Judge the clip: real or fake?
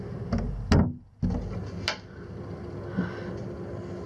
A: real